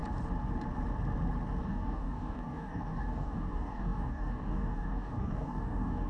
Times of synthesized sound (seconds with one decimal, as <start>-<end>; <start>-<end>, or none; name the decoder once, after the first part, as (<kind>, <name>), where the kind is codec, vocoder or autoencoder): 1.6-6.1 (codec, DAC)